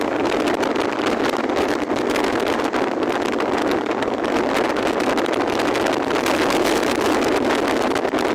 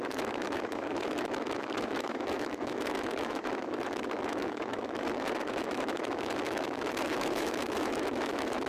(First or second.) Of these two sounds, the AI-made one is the second